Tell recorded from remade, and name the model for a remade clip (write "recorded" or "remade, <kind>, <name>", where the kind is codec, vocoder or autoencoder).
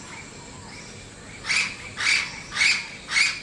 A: recorded